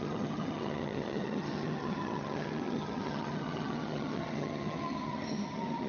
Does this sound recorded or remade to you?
remade